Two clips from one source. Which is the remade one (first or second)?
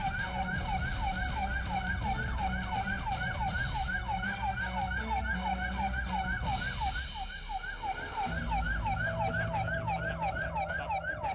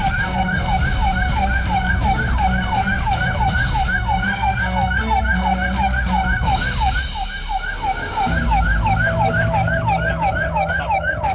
second